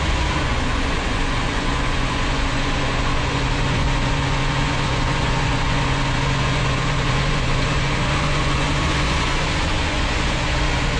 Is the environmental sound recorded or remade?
remade